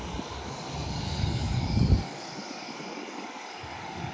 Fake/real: fake